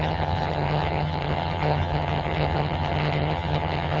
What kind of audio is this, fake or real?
fake